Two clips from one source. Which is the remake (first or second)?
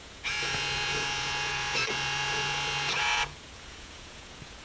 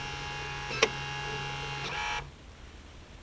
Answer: first